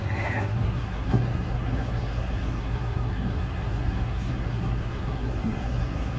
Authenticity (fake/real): fake